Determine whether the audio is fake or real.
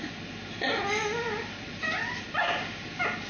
real